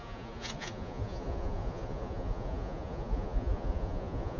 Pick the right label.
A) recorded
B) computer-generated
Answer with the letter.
B